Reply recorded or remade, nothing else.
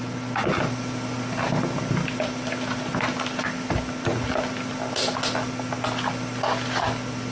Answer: recorded